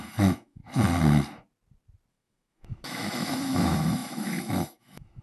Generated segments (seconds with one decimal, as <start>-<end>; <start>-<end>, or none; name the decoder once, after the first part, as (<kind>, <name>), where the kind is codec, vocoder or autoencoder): 0.0-0.6 (autoencoder, DAC-VAE); 2.1-5.2